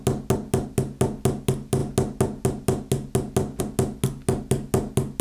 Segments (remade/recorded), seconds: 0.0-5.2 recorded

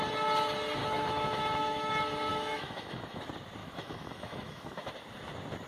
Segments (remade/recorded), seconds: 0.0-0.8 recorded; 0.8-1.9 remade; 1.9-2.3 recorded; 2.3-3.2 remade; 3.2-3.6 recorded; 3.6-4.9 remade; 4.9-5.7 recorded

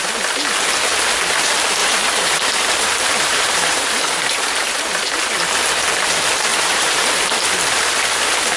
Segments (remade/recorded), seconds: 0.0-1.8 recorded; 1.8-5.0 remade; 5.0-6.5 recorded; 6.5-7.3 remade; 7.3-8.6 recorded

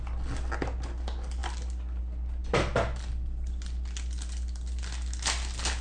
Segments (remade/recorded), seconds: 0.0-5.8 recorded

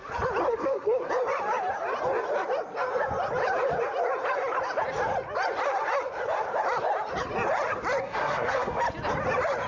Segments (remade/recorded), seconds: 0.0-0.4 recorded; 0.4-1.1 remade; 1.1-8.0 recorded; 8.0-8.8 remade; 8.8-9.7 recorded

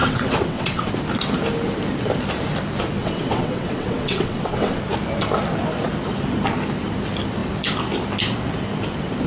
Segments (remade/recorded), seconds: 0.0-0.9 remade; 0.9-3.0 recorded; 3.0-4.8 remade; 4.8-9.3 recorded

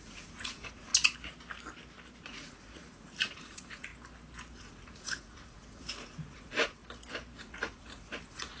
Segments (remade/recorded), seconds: 0.0-0.9 remade; 0.9-2.2 recorded; 2.2-3.9 remade; 3.9-4.5 recorded; 4.5-6.8 remade; 6.8-7.4 recorded; 7.4-8.6 remade